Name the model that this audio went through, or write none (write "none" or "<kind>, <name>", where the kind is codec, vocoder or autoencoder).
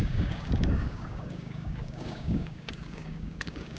codec, DAC